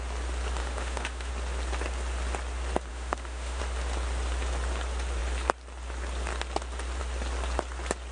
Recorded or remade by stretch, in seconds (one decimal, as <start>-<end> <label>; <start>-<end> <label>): 0.0-0.6 recorded; 0.6-1.3 remade; 1.3-2.9 recorded; 2.9-3.6 remade; 3.6-8.1 recorded